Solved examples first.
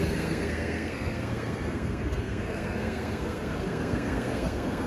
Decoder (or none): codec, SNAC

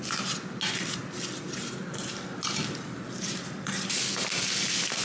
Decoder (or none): none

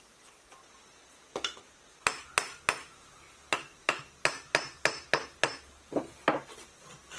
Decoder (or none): none